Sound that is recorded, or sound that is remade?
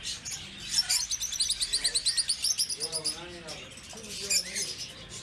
recorded